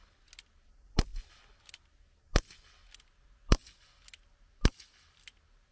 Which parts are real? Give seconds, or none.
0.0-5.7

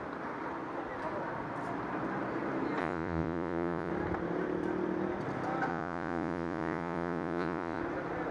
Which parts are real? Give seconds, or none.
0.0-2.8; 3.9-5.7; 7.8-8.3

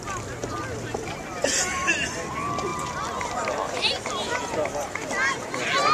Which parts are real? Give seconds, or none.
0.0-5.9

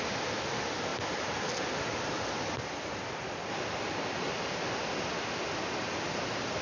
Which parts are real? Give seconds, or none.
0.0-6.6